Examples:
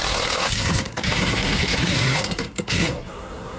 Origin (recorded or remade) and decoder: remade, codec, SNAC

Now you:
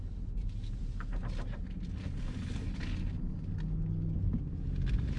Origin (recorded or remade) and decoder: recorded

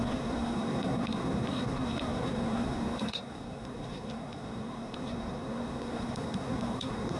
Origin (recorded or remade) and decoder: remade, codec, SNAC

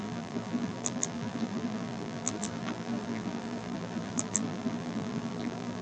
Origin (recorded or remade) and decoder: remade, vocoder, BigVGAN v2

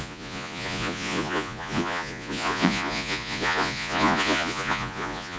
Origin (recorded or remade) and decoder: remade, vocoder, Vocos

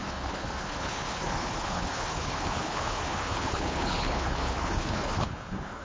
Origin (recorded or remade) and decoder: remade, codec, HILCodec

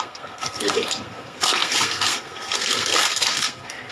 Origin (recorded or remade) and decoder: remade, codec, SNAC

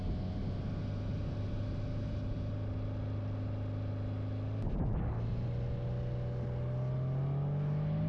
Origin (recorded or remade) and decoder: recorded